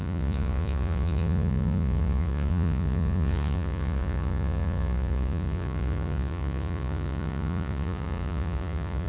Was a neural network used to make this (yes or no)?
yes